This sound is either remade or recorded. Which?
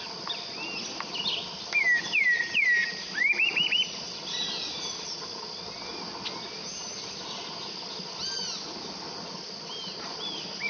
recorded